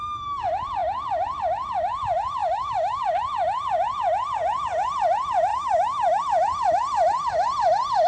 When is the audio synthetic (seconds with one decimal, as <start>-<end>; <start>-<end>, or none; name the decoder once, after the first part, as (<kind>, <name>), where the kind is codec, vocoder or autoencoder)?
2.4-3.0 (autoencoder, DAC-VAE); 5.5-6.2